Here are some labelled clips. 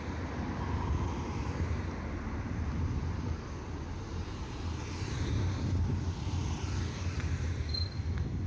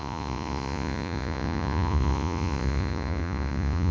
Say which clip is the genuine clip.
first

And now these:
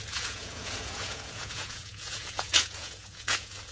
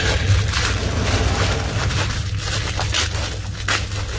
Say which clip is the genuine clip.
second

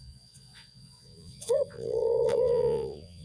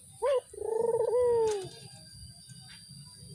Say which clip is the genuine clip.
second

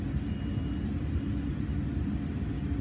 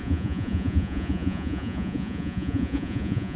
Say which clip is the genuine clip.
first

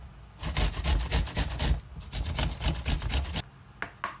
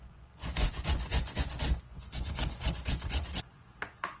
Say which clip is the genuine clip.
first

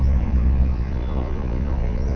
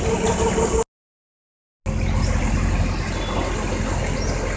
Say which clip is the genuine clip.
second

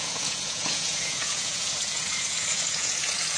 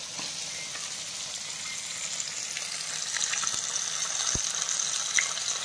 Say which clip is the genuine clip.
second